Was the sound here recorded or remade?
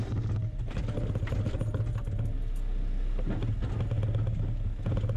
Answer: recorded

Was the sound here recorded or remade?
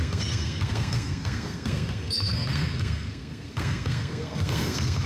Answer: remade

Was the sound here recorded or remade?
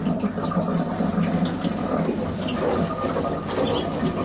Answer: recorded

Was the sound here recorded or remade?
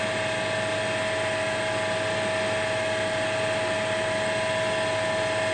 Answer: recorded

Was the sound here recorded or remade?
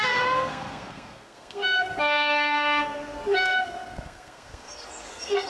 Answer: remade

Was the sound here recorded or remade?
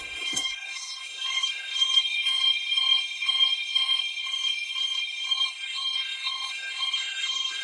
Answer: remade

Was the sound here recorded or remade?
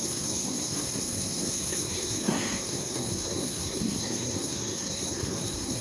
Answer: remade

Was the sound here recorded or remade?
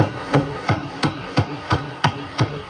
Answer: remade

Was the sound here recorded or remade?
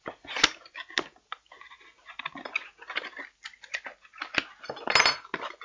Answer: recorded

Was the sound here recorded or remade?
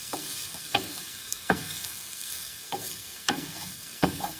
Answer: remade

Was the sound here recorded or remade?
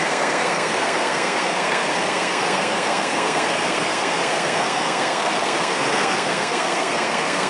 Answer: remade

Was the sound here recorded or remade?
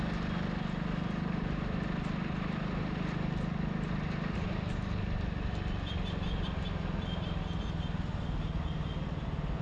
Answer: recorded